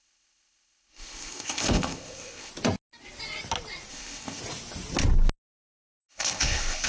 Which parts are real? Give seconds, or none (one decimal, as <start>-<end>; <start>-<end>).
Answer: 2.5-3.9; 4.4-6.1